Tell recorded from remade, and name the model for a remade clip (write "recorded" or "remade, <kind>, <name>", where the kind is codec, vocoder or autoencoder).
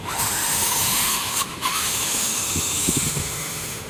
remade, autoencoder, DAC-VAE